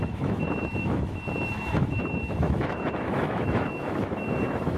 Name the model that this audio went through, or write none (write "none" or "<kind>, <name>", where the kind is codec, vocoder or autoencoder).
autoencoder, DAC-VAE